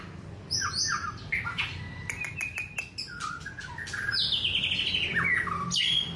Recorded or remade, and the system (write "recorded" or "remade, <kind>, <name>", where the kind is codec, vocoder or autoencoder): recorded